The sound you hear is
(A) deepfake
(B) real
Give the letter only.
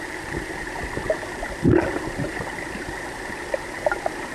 B